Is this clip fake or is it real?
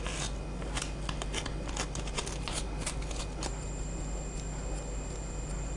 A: real